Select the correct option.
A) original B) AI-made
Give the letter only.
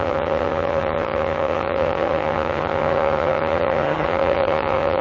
B